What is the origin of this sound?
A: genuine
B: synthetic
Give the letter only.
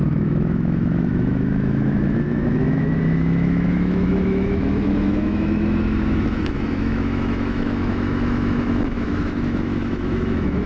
B